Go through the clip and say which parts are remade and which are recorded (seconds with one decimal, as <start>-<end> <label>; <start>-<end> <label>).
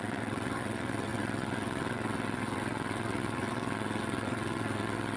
0.0-5.2 remade